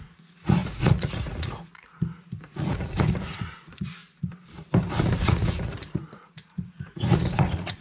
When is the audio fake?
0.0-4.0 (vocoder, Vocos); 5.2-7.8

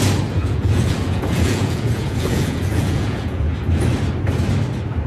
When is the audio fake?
0.4-3.5 (vocoder, Vocos)

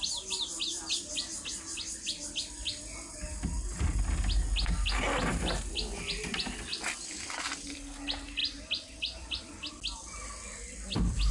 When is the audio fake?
none

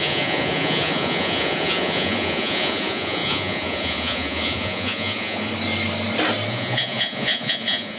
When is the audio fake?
0.0-5.5 (vocoder, Vocos); 6.5-8.0

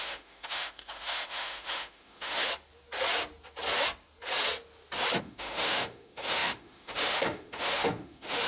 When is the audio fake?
0.0-2.5 (autoencoder, DAC-VAE); 5.2-8.5

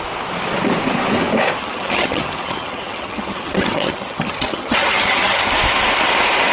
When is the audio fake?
1.6-5.5 (vocoder, HiFi-GAN)

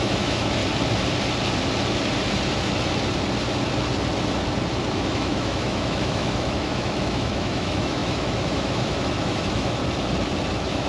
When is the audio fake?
0.0-0.6 (autoencoder, DAC-VAE); 4.9-9.8; 10.5-10.9

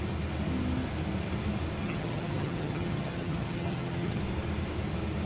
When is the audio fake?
1.8-4.2 (vocoder, HiFi-GAN)